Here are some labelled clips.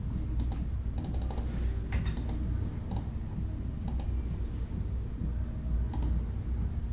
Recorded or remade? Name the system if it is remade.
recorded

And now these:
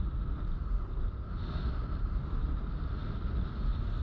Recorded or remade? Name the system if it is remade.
recorded